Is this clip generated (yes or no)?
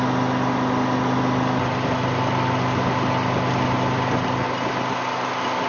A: no